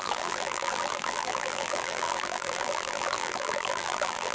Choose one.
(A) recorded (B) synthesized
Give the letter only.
B